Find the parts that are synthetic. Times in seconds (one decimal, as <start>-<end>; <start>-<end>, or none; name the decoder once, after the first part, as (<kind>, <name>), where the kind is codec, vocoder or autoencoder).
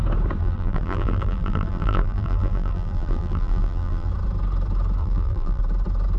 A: 0.4-4.1 (vocoder, BigVGAN v2); 5.0-5.6